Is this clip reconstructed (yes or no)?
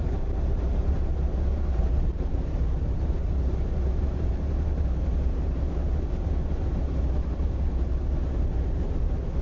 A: yes